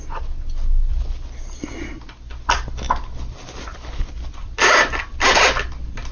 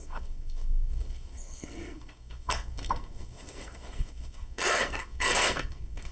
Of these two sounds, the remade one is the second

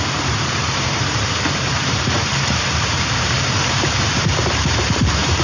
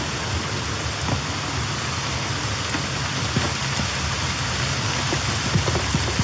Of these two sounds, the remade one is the first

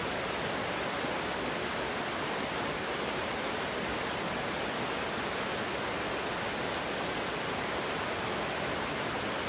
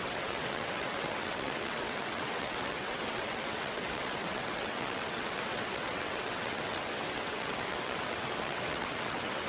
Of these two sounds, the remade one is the second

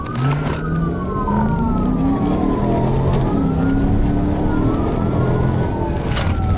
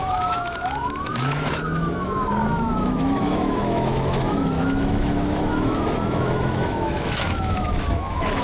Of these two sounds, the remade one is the second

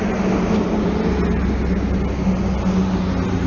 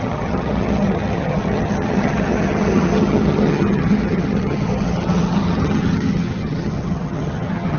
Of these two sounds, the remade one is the second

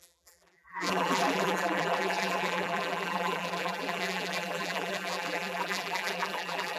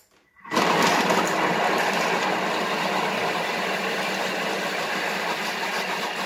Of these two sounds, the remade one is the first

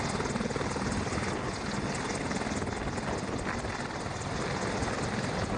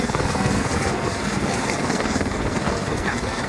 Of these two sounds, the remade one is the second